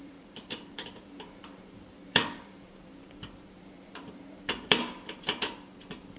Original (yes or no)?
no